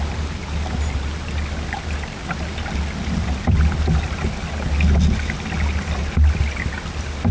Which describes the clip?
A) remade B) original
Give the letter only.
B